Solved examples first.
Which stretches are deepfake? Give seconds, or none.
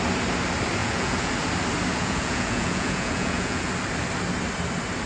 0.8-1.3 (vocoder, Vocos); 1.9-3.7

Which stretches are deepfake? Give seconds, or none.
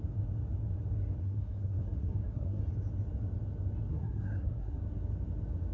1.2-2.6 (codec, SNAC); 3.9-4.8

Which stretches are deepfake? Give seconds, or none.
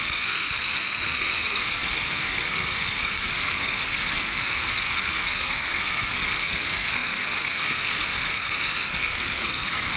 0.0-10.0 (codec, SNAC)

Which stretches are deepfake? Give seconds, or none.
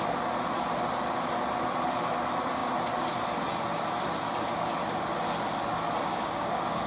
6.1-6.9 (codec, DAC)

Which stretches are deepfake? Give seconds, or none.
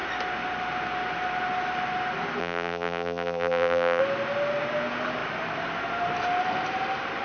2.4-4.0 (vocoder, BigVGAN v2)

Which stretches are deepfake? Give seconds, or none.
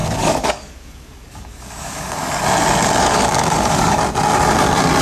0.0-2.4 (codec, DAC); 3.0-4.0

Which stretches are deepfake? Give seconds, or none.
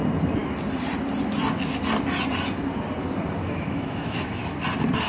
3.4-4.6 (autoencoder, DAC-VAE)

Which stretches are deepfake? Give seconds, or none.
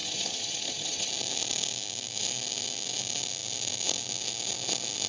0.0-1.1 (vocoder, HiFi-GAN)